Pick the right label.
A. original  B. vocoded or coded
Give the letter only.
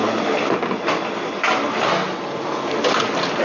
A